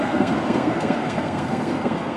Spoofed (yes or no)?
yes